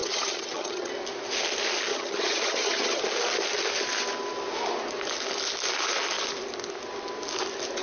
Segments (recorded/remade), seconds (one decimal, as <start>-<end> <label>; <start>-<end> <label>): 0.0-0.9 remade; 0.9-1.9 recorded; 1.9-3.0 remade; 3.0-7.8 recorded